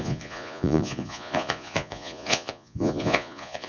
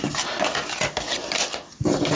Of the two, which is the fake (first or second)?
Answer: first